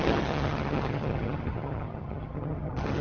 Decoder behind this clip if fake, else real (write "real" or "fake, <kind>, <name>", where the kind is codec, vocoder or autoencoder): fake, vocoder, HiFi-GAN